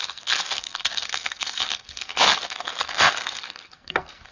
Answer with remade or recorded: remade